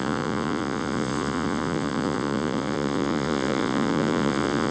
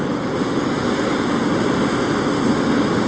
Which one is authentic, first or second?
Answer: second